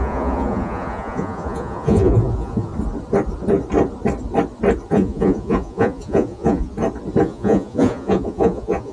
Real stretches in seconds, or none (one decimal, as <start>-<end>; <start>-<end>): 2.7-4.9; 6.7-7.2